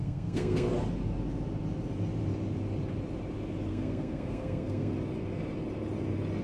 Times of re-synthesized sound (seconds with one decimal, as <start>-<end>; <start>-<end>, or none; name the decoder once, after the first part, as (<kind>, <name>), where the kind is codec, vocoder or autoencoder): 0.0-0.7 (codec, SNAC); 3.7-4.9